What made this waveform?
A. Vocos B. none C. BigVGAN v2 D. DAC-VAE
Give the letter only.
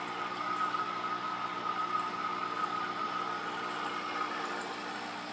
B